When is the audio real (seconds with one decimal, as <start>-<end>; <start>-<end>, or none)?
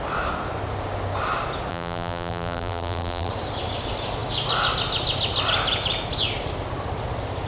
0.0-1.7; 3.3-7.5